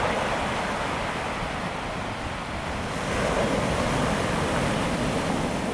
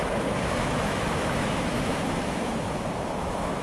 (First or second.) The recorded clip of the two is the first